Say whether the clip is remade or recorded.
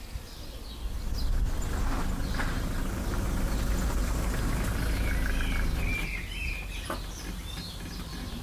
recorded